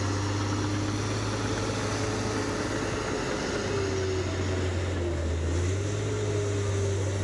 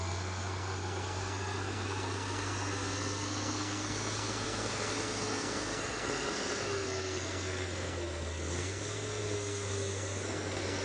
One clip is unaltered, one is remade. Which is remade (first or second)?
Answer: second